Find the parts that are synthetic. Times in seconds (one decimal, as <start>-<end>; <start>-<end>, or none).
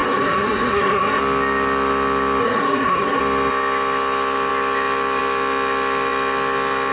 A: 0.0-1.2; 2.4-3.2